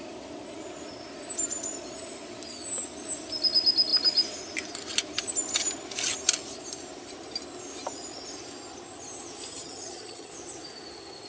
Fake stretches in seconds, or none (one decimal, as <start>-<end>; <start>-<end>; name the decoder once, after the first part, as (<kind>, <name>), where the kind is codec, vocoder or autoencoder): 9.5-10.3 (vocoder, HiFi-GAN)